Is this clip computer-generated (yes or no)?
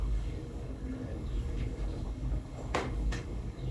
yes